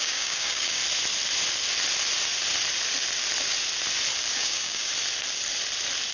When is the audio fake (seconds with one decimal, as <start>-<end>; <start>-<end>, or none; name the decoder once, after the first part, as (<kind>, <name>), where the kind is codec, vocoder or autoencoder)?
0.0-0.8 (codec, DAC); 4.3-4.9